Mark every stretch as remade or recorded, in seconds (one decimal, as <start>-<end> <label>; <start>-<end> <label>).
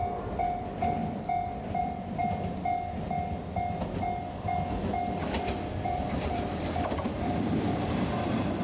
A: 0.0-0.6 recorded; 0.6-1.0 remade; 1.0-1.8 recorded; 1.8-2.2 remade; 2.2-5.7 recorded; 5.7-8.6 remade